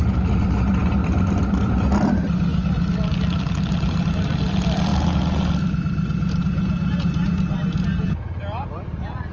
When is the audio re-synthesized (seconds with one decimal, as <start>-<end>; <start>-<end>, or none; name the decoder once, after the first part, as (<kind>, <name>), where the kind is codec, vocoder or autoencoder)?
none